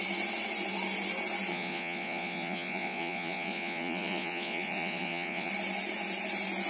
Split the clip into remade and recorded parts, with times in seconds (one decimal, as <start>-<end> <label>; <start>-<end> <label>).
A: 0.0-1.5 recorded; 1.5-5.5 remade; 5.5-6.7 recorded